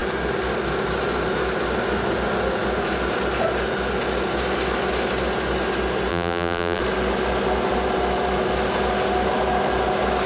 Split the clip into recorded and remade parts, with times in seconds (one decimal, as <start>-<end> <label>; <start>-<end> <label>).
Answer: 0.0-6.1 recorded; 6.1-6.8 remade; 6.8-10.3 recorded